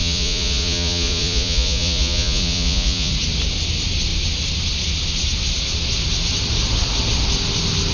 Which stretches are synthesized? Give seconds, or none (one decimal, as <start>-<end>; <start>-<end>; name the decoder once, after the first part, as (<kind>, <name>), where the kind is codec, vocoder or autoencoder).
0.0-3.1 (vocoder, Vocos)

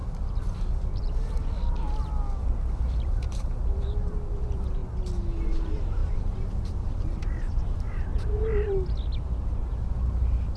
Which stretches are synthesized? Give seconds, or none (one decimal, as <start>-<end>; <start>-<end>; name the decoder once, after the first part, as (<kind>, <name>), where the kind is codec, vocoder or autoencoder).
2.9-4.8 (vocoder, BigVGAN v2); 5.4-8.1

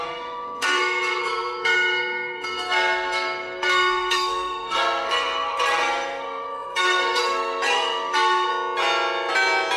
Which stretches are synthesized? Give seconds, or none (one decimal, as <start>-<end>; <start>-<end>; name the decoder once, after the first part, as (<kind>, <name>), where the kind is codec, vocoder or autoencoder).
0.0-8.5 (codec, SNAC)

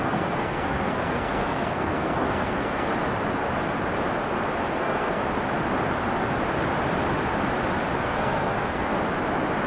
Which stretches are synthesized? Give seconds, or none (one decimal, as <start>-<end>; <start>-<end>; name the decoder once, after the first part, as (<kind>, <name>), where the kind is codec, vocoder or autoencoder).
0.0-2.9 (codec, SNAC); 4.8-5.2; 8.0-8.9

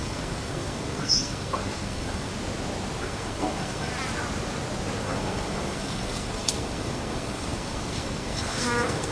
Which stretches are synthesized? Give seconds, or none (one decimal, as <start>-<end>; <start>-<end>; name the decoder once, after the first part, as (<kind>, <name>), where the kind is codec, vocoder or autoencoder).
0.0-2.3 (codec, SNAC); 3.0-3.9; 5.0-9.1

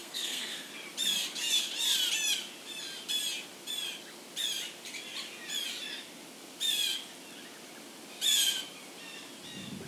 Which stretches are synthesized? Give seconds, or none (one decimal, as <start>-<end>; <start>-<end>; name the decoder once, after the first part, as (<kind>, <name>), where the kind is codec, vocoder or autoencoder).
0.0-0.7 (codec, SNAC)

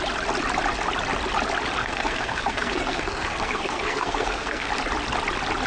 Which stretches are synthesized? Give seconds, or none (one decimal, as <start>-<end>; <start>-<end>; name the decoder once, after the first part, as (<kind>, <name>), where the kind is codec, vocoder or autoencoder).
1.8-4.7 (codec, SNAC)